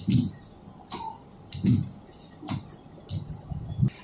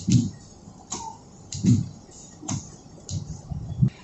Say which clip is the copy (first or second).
second